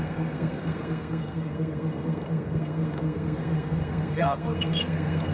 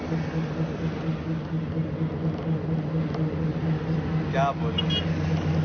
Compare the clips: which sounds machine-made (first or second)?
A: first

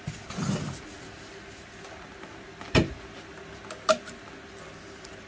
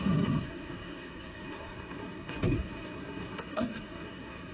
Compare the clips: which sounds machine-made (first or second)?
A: second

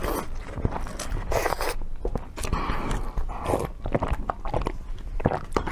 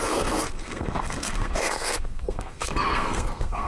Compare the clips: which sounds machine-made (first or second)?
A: second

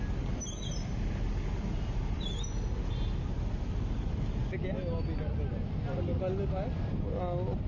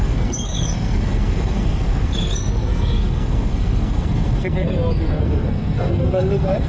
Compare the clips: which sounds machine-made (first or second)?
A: second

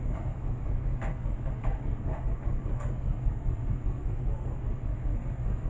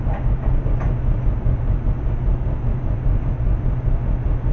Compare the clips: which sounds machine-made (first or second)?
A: first